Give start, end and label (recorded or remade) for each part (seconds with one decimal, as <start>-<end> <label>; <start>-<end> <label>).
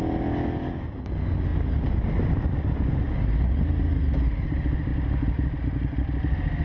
0.0-6.6 recorded